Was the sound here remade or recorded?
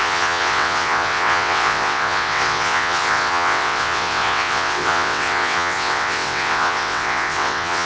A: remade